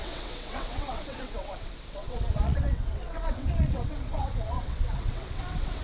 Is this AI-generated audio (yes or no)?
yes